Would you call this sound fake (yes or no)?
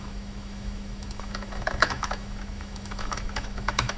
yes